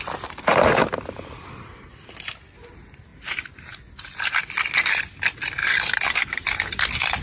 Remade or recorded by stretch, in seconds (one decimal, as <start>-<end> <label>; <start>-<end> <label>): 0.0-7.2 recorded